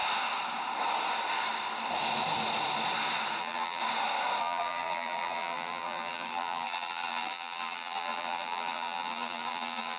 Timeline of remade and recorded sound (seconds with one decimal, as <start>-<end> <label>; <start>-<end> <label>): 0.0-3.4 recorded; 3.4-3.8 remade; 3.8-4.4 recorded; 4.4-10.0 remade